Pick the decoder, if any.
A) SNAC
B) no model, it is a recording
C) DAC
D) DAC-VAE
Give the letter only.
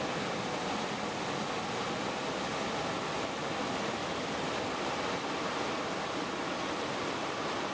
B